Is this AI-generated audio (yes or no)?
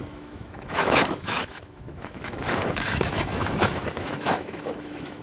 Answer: yes